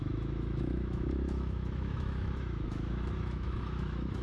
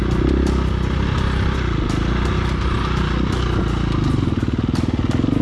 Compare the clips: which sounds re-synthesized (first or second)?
first